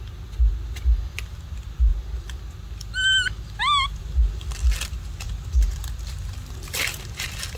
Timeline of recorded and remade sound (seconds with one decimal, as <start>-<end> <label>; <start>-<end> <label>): 0.0-7.6 recorded